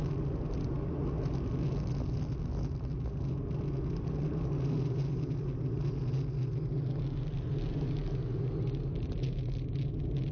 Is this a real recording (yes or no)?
yes